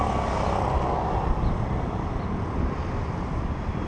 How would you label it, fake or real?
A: real